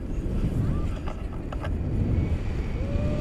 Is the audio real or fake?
real